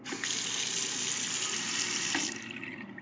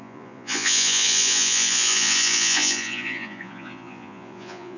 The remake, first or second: second